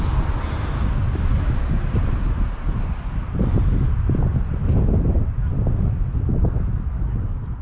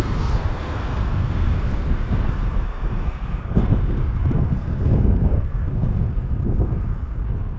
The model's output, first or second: second